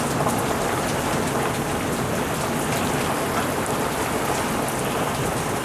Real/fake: real